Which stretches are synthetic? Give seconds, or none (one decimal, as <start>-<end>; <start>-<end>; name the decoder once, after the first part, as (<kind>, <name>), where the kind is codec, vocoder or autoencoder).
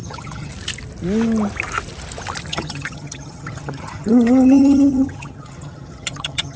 0.0-0.5 (vocoder, HiFi-GAN); 2.5-6.6